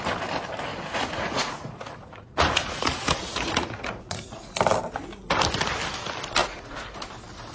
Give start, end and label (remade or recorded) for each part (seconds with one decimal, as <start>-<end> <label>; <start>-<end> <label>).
0.0-0.7 recorded; 0.7-4.5 remade; 4.5-6.4 recorded; 6.4-7.0 remade; 7.0-7.5 recorded